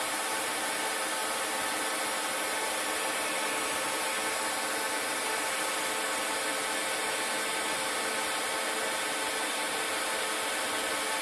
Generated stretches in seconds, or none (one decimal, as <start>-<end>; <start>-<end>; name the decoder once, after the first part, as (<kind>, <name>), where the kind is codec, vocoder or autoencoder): none